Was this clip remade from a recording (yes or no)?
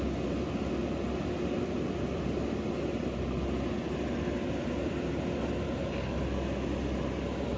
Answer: no